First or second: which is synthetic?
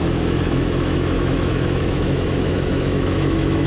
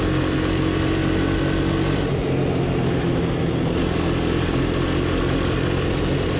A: first